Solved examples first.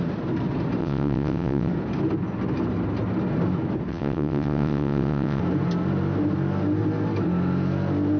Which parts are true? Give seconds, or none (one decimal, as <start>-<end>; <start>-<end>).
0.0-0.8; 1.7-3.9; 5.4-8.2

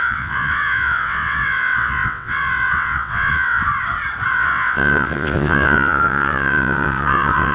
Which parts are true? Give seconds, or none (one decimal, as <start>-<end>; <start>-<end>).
3.6-4.3

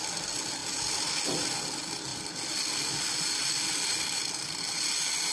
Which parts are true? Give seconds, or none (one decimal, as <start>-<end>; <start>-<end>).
0.0-5.3

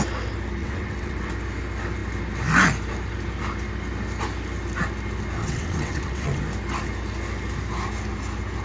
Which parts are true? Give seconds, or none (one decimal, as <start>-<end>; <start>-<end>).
0.0-0.6; 1.3-5.4; 6.4-8.6

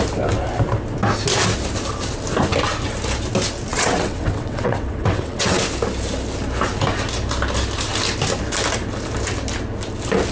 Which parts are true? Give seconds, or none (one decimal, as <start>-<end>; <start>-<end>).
0.0-3.7; 5.6-10.3